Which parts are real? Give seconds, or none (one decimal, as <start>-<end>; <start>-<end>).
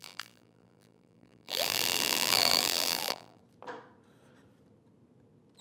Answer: 3.4-5.6